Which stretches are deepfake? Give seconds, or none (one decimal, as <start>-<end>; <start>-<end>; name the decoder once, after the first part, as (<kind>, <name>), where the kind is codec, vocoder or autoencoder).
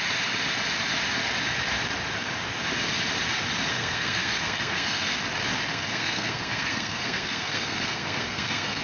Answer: 3.7-5.2 (codec, SNAC); 5.7-8.8